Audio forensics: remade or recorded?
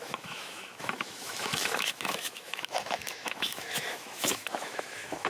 remade